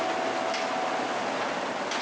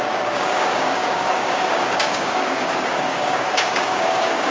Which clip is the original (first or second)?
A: first